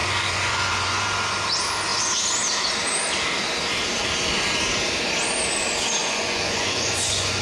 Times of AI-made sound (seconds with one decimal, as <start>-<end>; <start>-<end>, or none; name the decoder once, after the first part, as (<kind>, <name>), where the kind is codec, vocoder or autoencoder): 0.0-1.0 (vocoder, Vocos); 6.0-7.4

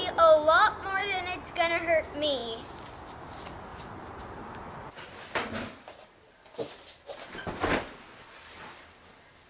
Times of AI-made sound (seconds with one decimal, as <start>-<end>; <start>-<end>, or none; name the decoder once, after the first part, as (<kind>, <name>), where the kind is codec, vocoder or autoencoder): 3.7-4.4 (vocoder, BigVGAN v2)

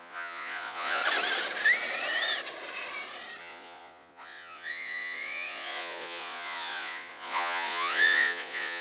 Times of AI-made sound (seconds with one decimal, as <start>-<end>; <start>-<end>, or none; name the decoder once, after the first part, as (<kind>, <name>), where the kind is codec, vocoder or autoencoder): 0.0-1.0 (vocoder, Vocos); 3.4-8.8